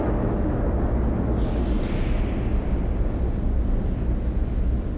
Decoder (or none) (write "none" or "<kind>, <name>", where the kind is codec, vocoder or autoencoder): none